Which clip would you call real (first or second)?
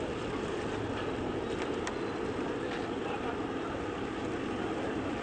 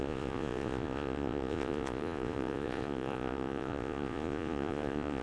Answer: first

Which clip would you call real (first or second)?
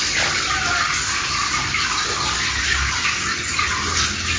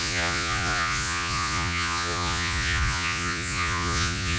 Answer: first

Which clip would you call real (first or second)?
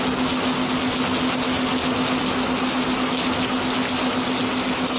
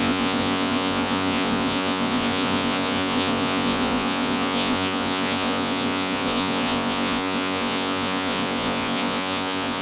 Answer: first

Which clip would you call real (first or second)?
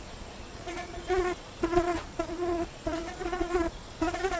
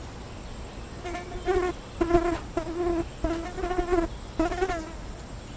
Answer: second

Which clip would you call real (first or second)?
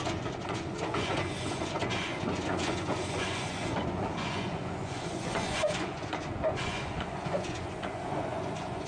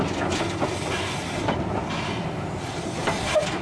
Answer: second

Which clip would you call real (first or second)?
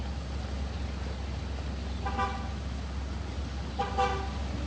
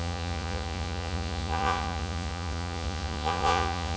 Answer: first